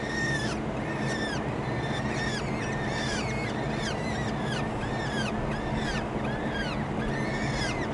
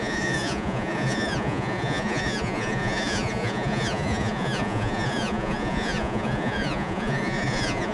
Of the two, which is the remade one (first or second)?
second